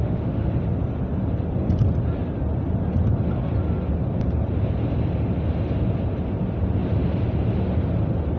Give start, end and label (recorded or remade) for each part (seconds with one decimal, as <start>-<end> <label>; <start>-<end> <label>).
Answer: 0.0-0.5 remade; 0.5-8.4 recorded